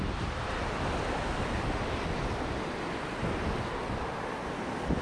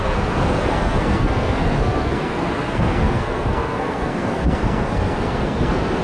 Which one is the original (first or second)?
first